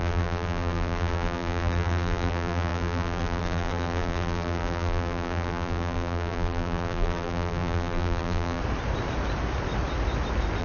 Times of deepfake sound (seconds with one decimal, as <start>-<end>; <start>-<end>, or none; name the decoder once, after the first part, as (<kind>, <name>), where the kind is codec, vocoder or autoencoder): 0.0-8.6 (vocoder, BigVGAN v2)